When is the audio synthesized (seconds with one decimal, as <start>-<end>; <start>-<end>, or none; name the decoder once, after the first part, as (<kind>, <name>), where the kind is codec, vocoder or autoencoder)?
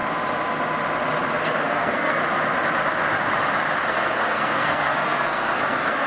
1.4-2.2 (codec, SNAC); 3.9-6.1